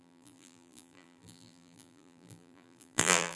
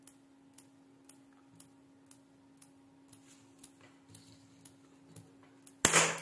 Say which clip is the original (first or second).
second